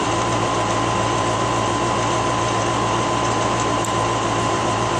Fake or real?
fake